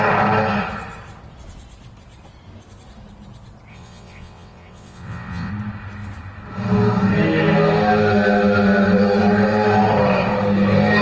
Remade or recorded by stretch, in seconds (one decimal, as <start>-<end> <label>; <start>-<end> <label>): 0.0-3.7 recorded; 3.7-5.5 remade; 5.5-11.0 recorded